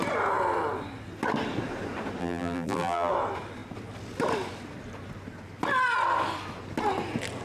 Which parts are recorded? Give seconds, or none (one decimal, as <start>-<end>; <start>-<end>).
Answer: 0.0-2.2; 3.1-7.4